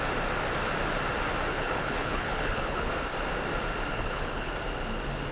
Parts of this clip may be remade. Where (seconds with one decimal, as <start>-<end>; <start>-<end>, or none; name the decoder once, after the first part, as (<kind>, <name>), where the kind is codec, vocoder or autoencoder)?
1.5-2.9 (codec, HILCodec); 3.9-4.5